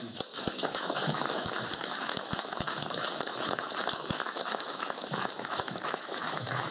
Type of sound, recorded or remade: remade